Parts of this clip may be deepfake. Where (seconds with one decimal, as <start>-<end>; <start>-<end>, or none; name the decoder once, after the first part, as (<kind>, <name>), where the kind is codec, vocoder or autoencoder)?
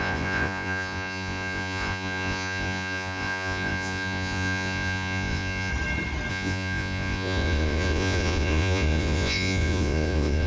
0.0-5.7 (vocoder, Vocos); 6.3-10.5